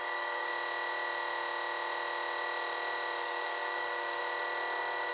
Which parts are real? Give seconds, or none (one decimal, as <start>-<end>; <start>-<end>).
0.5-3.2; 4.2-5.1